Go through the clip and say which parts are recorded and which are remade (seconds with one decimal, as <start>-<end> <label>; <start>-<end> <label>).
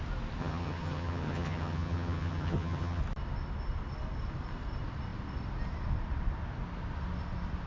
0.0-0.4 recorded; 0.4-3.0 remade; 3.0-7.7 recorded